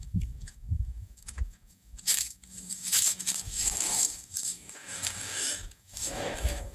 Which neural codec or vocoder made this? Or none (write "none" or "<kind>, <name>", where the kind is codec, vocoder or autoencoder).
codec, DAC